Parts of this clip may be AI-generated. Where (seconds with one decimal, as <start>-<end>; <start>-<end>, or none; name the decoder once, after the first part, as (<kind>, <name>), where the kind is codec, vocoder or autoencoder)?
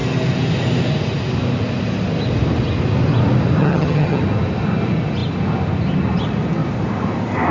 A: 3.6-4.2 (vocoder, HiFi-GAN)